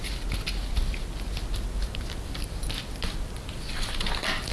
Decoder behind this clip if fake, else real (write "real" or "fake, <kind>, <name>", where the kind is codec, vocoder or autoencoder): real